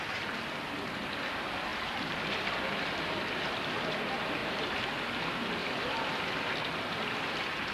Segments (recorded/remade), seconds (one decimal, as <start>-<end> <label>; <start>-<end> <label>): 0.0-1.7 recorded; 1.7-2.2 remade; 2.2-4.4 recorded; 4.4-4.9 remade; 4.9-5.6 recorded; 5.6-6.2 remade; 6.2-7.7 recorded